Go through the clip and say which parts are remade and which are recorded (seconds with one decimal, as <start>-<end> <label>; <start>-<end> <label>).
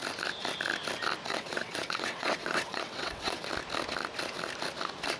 0.0-1.3 recorded; 1.3-3.5 remade; 3.5-5.2 recorded